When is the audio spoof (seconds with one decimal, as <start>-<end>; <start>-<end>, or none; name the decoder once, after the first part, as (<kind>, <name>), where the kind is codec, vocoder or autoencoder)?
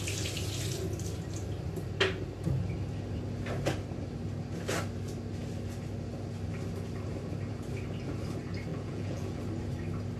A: 8.7-9.4 (vocoder, Vocos)